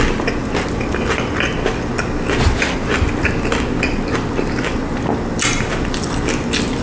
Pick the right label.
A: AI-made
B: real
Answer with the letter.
B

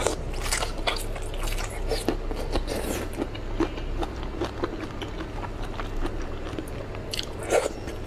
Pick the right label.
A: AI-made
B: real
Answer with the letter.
B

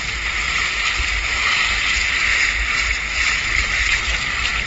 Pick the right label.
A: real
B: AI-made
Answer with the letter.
A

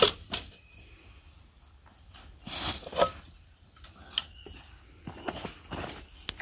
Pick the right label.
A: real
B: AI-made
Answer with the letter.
A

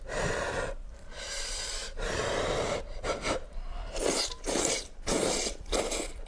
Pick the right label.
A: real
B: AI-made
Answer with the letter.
B